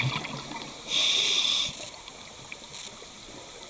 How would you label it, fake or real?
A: real